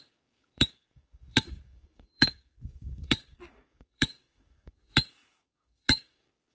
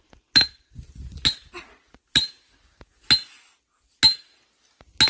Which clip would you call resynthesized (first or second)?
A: first